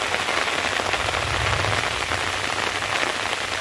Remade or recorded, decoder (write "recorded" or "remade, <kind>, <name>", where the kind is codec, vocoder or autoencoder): recorded